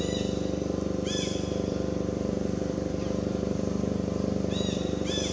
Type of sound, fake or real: fake